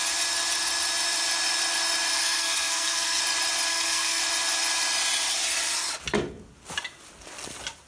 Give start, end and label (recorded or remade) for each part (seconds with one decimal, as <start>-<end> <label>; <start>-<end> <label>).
0.0-2.1 recorded; 2.1-3.2 remade; 3.2-3.7 recorded; 3.7-4.2 remade; 4.2-7.9 recorded